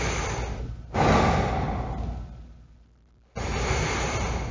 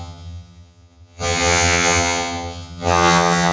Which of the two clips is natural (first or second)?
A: first